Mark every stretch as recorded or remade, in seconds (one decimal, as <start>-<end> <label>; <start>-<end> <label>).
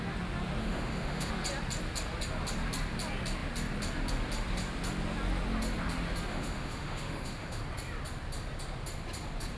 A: 0.0-0.6 recorded; 0.6-1.3 remade; 1.3-6.3 recorded; 6.3-7.6 remade; 7.6-9.6 recorded